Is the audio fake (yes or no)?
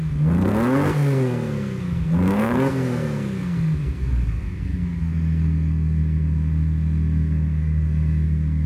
yes